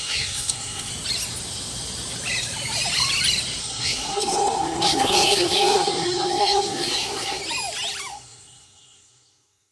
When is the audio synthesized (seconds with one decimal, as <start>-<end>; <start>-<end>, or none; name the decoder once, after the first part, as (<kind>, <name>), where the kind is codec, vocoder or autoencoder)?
0.0-0.9 (codec, SNAC); 3.6-7.4; 8.1-9.7